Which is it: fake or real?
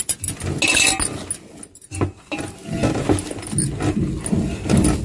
real